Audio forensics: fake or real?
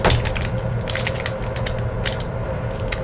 real